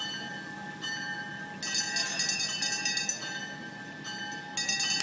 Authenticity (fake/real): real